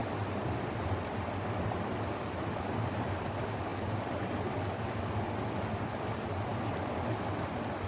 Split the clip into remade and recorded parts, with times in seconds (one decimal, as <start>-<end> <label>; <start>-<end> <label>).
0.0-7.9 recorded